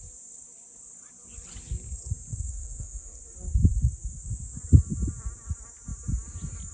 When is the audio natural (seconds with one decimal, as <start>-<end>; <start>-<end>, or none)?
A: 0.0-2.3; 3.2-6.7